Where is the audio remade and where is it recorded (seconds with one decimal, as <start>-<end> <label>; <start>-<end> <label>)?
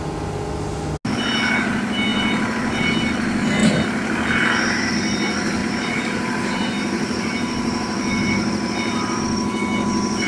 0.0-5.6 recorded; 5.6-9.2 remade; 9.2-10.3 recorded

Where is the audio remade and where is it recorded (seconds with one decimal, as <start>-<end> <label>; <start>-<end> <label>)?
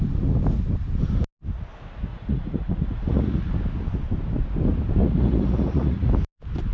0.0-2.1 recorded; 2.1-3.5 remade; 3.5-5.0 recorded; 5.0-6.1 remade; 6.1-6.7 recorded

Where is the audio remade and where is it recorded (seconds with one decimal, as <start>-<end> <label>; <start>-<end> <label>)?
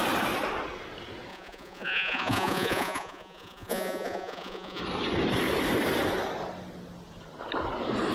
0.0-1.3 recorded; 1.3-4.8 remade; 4.8-8.1 recorded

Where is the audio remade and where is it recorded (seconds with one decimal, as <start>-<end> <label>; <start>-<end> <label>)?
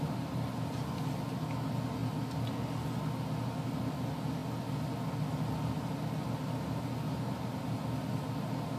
0.0-8.8 recorded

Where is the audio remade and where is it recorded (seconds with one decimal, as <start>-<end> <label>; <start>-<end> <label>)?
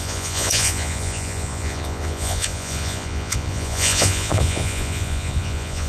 0.0-5.9 remade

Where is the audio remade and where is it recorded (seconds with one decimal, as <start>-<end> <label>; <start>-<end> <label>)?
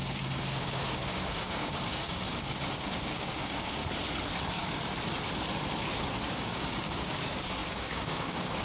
0.0-3.8 remade; 3.8-6.3 recorded; 6.3-8.6 remade